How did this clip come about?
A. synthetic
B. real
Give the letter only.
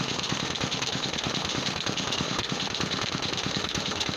A